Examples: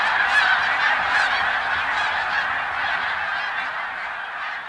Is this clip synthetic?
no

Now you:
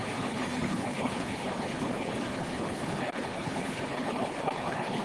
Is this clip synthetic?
yes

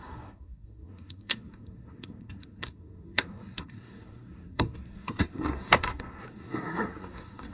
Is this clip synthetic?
yes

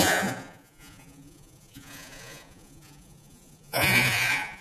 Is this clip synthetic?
yes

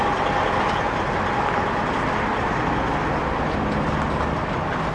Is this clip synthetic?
no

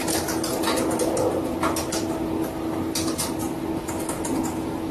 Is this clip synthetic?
no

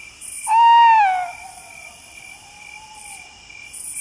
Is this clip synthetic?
no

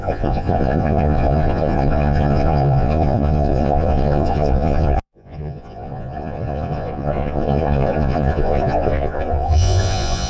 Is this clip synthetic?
yes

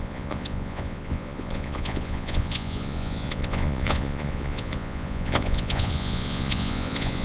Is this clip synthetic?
yes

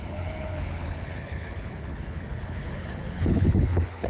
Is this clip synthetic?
yes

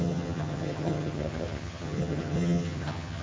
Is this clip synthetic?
yes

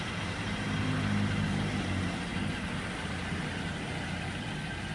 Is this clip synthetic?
no